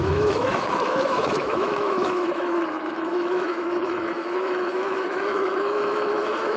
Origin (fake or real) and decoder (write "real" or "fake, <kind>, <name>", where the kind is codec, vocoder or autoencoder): fake, autoencoder, DAC-VAE